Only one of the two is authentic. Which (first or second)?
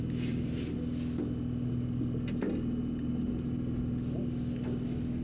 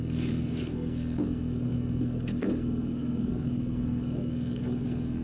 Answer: first